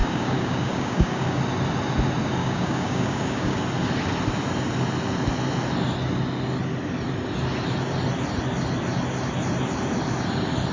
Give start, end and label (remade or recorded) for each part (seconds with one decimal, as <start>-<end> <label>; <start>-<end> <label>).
0.0-1.4 remade; 1.4-2.4 recorded; 2.4-3.6 remade; 3.6-10.7 recorded